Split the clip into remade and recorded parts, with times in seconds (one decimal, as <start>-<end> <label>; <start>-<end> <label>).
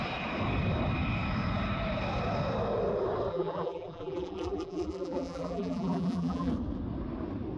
0.0-3.3 recorded; 3.3-6.5 remade; 6.5-7.6 recorded